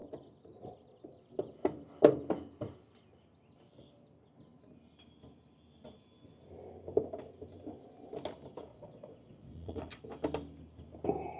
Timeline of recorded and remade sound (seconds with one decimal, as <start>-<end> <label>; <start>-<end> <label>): 0.0-8.7 recorded; 8.7-10.0 remade; 10.0-11.4 recorded